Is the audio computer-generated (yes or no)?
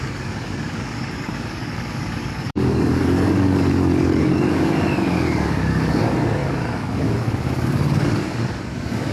yes